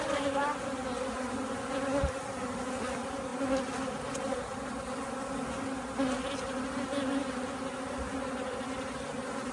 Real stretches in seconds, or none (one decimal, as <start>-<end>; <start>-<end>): 0.0-9.5